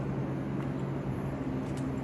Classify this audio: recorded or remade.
recorded